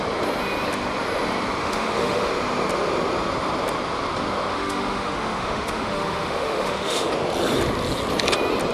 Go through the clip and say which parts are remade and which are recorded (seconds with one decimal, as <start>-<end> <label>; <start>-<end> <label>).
0.0-1.6 recorded; 1.6-2.3 remade; 2.3-4.5 recorded; 4.5-7.1 remade; 7.1-8.7 recorded